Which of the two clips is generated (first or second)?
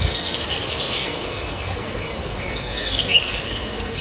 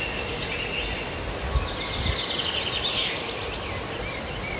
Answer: first